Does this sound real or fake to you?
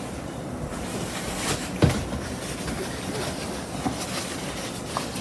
real